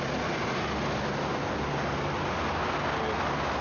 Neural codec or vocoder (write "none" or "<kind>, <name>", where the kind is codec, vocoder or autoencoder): none